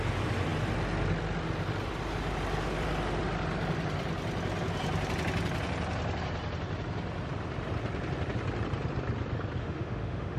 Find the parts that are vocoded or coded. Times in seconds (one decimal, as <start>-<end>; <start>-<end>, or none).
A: 9.6-10.4